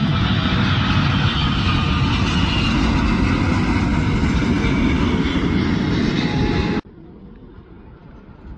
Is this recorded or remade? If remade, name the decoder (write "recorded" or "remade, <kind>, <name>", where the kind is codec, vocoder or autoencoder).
recorded